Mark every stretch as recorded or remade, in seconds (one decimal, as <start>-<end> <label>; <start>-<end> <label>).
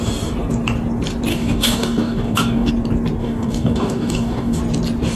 0.0-1.3 recorded; 1.3-2.7 remade; 2.7-3.2 recorded; 3.2-4.6 remade; 4.6-5.2 recorded